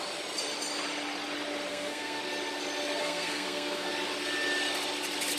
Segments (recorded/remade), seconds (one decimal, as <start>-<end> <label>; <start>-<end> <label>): 0.0-1.7 recorded; 1.7-2.2 remade; 2.2-3.0 recorded; 3.0-3.9 remade; 3.9-5.4 recorded